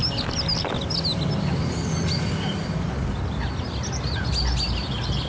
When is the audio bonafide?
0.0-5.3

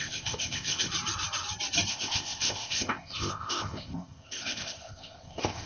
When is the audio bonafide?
0.9-1.9

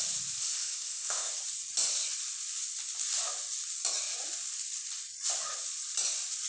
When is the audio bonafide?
0.0-0.4; 1.3-6.5

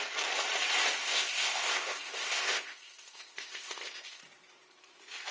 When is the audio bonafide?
0.0-1.0; 4.2-5.3

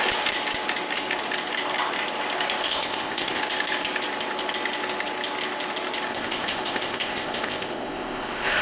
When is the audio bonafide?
0.0-2.6; 3.4-6.1

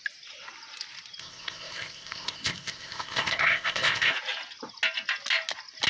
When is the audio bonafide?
0.0-1.2; 4.1-5.9

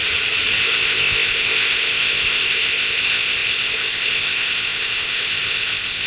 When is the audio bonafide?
0.0-0.6

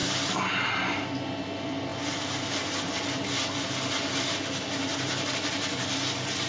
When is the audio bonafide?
0.0-6.5